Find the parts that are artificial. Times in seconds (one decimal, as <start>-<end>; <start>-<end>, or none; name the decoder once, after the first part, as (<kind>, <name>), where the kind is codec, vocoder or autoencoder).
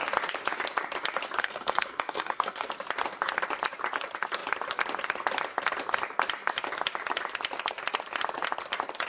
1.4-2.7 (codec, SNAC)